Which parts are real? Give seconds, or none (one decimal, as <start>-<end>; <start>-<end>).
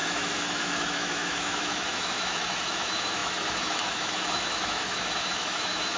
none